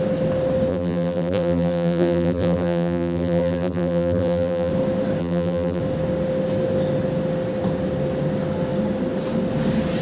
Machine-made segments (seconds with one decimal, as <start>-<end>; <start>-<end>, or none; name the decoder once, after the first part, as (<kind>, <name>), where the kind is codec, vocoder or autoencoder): 0.7-4.7 (vocoder, BigVGAN v2); 5.2-5.8